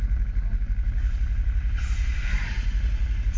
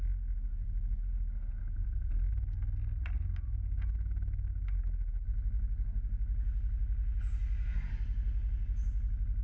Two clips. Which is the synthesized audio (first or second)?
first